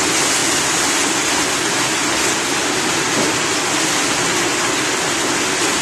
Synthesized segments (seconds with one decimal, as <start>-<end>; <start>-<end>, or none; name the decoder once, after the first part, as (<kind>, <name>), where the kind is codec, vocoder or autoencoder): none